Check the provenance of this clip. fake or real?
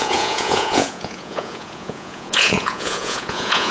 fake